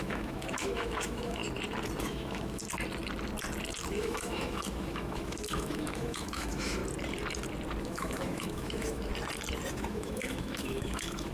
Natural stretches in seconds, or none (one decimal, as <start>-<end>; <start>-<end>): 1.4-2.0; 2.6-3.9; 6.8-7.8; 9.1-9.7